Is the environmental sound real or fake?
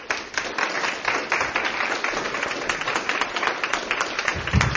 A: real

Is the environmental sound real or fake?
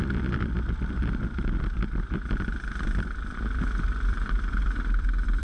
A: fake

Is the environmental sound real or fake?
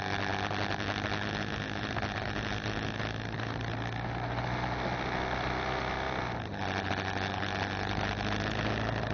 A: real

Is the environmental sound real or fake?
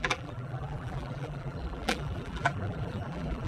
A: fake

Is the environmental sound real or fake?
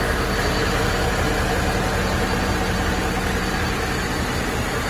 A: real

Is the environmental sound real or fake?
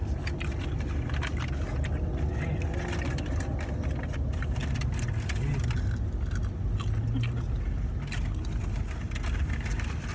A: real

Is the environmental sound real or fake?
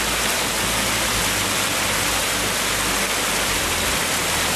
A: real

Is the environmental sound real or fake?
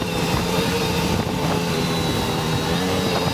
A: fake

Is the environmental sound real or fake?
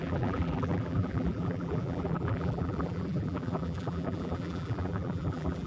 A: fake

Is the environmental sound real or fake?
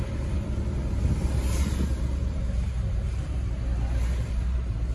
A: fake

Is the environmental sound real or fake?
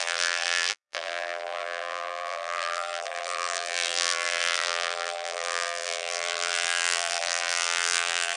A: fake